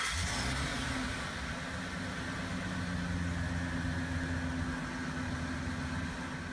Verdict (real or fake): real